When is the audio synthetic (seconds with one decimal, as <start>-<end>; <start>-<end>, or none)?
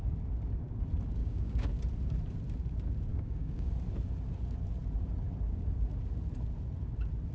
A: 1.2-1.7; 3.1-3.7